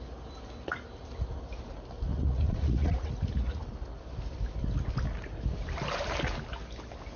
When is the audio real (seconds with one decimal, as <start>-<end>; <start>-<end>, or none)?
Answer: 0.0-2.1; 3.6-7.2